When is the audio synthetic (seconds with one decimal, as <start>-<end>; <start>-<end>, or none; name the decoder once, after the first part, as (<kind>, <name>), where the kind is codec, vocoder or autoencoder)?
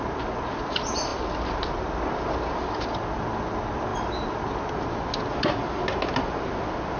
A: none